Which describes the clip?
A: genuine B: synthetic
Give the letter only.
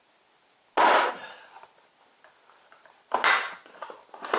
A